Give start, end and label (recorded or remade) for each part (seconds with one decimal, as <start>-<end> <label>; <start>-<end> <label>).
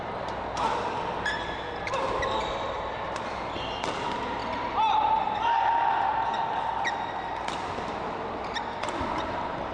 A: 0.0-4.4 recorded; 4.4-7.4 remade; 7.4-9.7 recorded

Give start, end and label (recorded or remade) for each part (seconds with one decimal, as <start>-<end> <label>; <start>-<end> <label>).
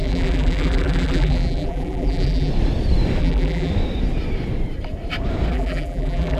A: 0.0-2.5 remade; 2.5-3.2 recorded; 3.2-3.7 remade; 3.7-5.5 recorded; 5.5-6.4 remade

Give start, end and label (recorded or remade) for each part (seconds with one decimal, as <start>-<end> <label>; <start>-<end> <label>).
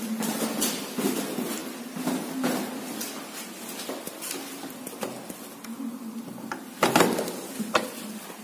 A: 0.0-1.6 remade; 1.6-4.9 recorded; 4.9-8.4 remade